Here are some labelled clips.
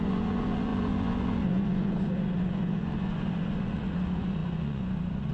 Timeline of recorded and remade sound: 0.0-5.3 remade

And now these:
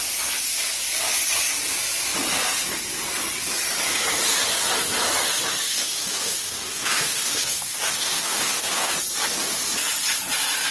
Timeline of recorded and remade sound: 0.0-5.7 recorded; 5.7-8.9 remade; 8.9-10.7 recorded

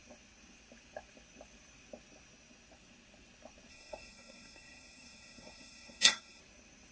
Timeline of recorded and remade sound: 0.0-3.7 recorded; 3.7-6.4 remade; 6.4-6.9 recorded

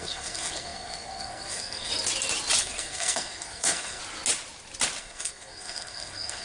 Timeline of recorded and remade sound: 0.0-1.9 remade; 1.9-2.6 recorded; 2.6-4.0 remade; 4.0-5.0 recorded; 5.0-6.4 remade

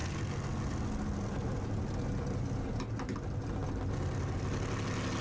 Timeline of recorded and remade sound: 0.0-5.2 recorded